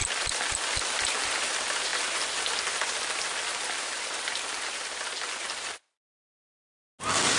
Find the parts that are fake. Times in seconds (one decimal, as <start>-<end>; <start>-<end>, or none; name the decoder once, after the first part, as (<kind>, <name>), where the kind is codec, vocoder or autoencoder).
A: none